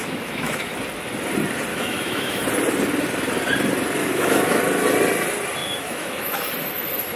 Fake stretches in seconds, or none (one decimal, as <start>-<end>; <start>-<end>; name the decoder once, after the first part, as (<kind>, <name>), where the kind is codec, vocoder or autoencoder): 0.0-0.7 (autoencoder, DAC-VAE); 1.7-2.4; 4.0-4.6; 5.6-6.5